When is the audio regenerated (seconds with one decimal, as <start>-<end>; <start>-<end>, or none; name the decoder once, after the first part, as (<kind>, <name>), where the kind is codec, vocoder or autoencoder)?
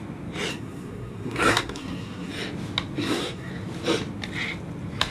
0.5-2.3 (codec, SNAC); 3.0-3.5